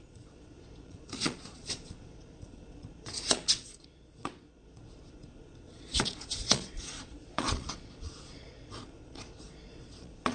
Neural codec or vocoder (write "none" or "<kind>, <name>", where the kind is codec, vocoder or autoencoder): vocoder, Vocos